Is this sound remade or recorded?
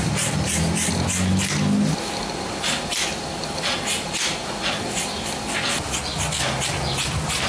recorded